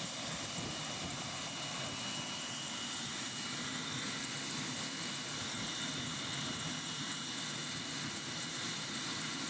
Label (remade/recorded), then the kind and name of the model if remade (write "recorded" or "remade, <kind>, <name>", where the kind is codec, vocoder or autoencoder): recorded